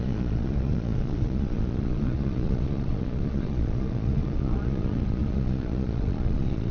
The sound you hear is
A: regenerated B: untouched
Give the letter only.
A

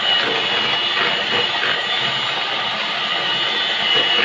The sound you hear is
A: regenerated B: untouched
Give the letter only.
B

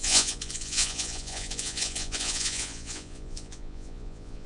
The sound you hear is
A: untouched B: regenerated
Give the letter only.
B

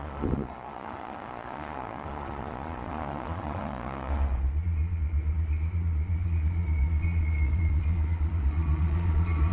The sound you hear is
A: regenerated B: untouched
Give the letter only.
A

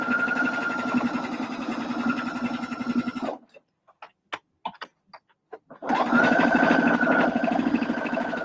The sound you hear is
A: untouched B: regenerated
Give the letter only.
A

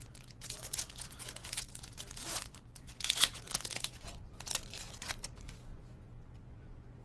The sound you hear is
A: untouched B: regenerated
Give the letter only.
B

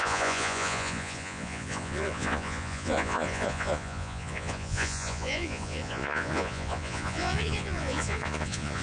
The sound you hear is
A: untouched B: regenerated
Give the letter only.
B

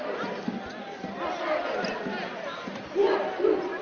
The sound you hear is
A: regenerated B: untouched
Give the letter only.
B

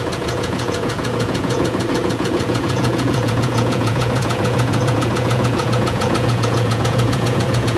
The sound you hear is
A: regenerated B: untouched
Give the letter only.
A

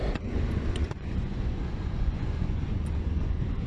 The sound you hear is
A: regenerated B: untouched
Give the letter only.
A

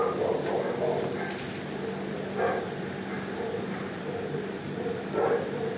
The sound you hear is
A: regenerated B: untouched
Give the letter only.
B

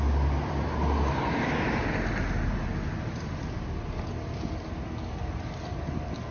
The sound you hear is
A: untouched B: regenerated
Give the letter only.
A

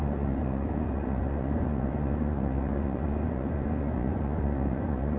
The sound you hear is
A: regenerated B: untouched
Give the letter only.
A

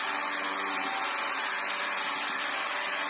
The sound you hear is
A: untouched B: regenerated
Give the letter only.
A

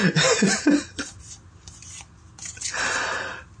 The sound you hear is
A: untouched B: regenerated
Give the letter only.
A